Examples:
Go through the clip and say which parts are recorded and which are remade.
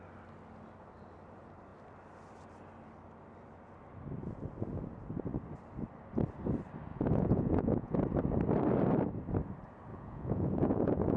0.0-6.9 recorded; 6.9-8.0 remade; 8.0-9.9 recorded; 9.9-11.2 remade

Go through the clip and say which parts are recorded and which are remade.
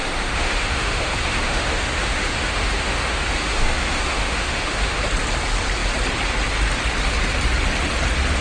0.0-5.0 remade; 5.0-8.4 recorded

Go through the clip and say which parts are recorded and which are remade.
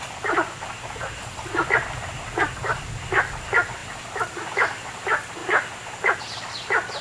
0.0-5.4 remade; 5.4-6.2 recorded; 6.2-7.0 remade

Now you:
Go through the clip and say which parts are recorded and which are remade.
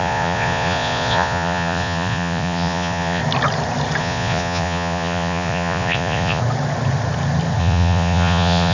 0.0-3.2 remade; 3.2-4.0 recorded; 4.0-6.4 remade; 6.4-7.6 recorded; 7.6-8.7 remade